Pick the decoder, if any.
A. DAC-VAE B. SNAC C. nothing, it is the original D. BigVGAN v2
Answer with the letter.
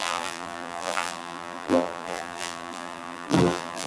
D